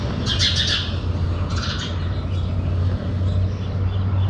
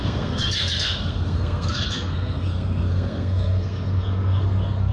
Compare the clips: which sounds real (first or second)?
first